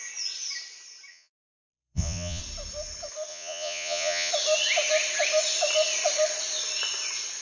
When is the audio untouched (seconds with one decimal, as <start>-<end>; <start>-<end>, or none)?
0.0-1.1; 2.4-3.3; 4.3-7.4